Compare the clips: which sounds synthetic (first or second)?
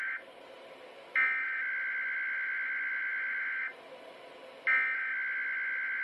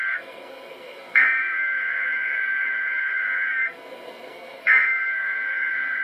second